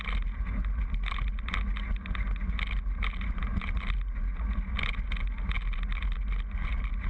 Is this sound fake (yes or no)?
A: no